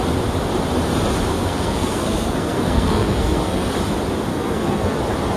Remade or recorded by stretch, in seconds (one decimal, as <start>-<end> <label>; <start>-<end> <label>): 0.0-1.3 recorded; 1.3-3.7 remade; 3.7-4.3 recorded; 4.3-5.0 remade; 5.0-5.4 recorded